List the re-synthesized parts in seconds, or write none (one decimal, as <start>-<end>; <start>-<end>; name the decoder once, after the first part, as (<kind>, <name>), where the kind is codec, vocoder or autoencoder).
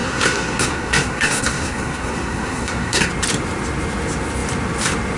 0.0-3.1 (codec, SNAC)